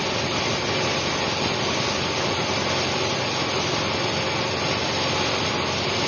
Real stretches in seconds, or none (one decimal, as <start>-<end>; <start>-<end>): 0.0-6.1